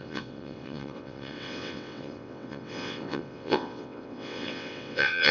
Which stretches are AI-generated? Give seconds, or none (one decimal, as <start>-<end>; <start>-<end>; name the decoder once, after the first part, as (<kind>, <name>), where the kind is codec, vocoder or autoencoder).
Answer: 0.0-5.3 (vocoder, WaveNeXt)